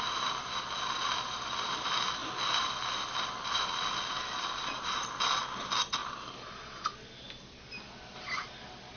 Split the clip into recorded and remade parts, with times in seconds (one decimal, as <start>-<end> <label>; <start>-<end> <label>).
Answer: 0.0-9.0 recorded